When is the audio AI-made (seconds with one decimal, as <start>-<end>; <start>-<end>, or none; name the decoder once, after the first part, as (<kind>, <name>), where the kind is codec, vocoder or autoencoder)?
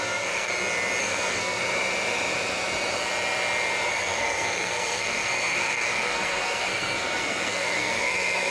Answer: 0.0-0.5 (codec, SNAC); 1.0-1.6; 3.9-8.5